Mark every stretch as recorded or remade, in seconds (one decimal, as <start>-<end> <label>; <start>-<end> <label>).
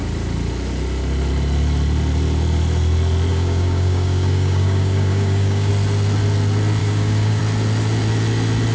0.0-3.3 recorded; 3.3-5.7 remade; 5.7-6.8 recorded; 6.8-7.4 remade; 7.4-8.7 recorded